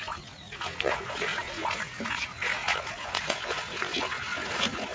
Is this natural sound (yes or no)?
no